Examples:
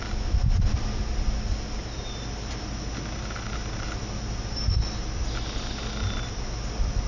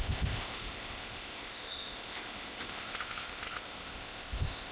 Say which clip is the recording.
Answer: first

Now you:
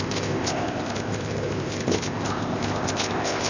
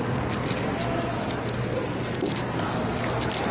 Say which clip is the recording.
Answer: second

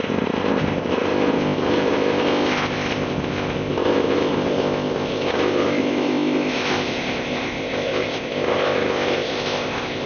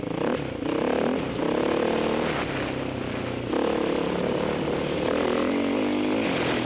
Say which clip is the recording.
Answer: second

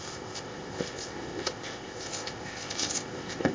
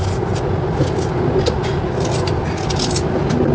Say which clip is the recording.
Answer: second